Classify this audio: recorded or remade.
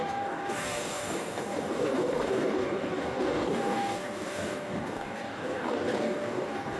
remade